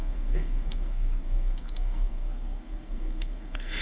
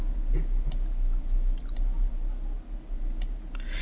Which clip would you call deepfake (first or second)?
first